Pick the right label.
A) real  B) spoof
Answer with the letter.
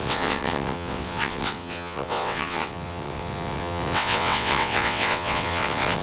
B